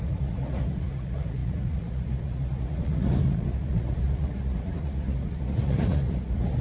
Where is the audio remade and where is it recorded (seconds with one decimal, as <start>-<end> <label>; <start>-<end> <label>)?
0.0-6.6 remade